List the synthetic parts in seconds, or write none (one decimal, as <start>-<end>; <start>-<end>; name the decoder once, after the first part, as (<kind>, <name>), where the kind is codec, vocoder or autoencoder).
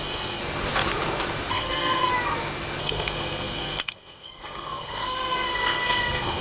0.0-0.4 (codec, SNAC); 1.5-2.1; 2.8-6.4